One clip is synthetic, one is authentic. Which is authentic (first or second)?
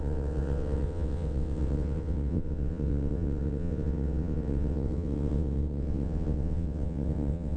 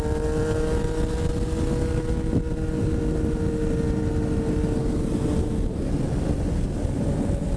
second